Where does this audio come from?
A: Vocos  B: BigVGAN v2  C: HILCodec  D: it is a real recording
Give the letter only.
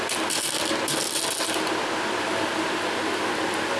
D